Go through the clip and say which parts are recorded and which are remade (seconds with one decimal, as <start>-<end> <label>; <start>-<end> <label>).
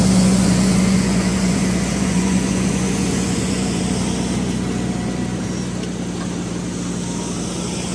0.0-3.8 remade; 3.8-7.9 recorded